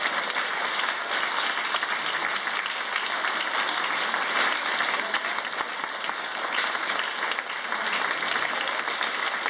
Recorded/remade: recorded